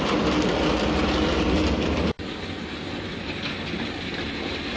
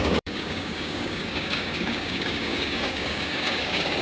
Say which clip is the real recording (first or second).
first